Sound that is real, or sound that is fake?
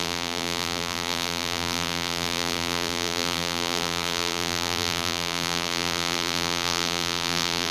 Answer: fake